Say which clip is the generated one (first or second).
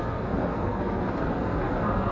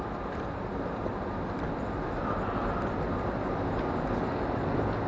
first